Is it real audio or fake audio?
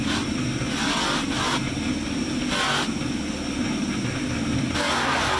real